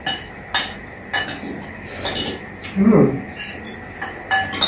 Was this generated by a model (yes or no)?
no